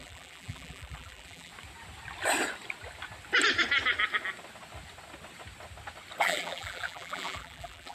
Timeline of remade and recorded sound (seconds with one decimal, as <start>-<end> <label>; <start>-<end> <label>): 0.0-1.5 remade; 1.5-6.2 recorded; 6.2-7.9 remade